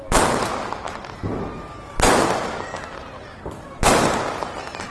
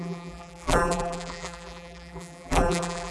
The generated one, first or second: second